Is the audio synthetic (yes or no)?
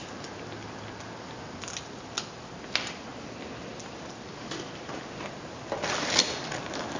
no